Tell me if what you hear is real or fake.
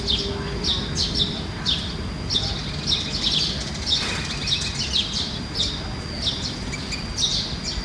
real